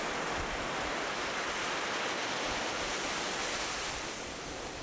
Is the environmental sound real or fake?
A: real